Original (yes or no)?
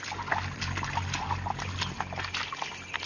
yes